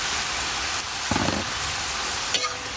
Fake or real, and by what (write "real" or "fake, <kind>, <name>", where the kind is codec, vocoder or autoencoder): real